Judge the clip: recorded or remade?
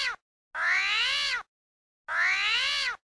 recorded